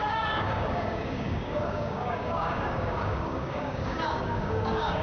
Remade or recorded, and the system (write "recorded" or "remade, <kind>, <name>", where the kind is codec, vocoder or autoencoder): remade, codec, DAC